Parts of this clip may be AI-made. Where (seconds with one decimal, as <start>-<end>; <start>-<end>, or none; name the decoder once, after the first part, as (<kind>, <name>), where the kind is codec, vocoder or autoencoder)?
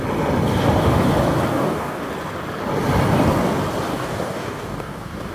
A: 1.5-2.1 (codec, DAC); 3.9-5.3